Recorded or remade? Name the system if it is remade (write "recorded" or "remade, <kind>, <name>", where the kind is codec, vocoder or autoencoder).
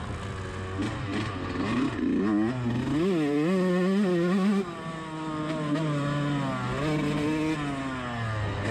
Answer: recorded